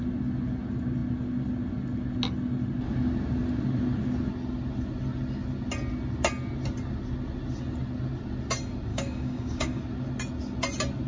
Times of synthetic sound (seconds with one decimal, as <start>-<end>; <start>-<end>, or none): 8.9-9.8